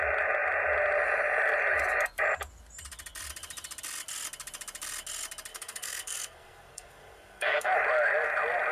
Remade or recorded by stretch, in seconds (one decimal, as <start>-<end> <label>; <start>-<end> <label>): 0.0-5.5 recorded; 5.5-7.7 remade; 7.7-8.7 recorded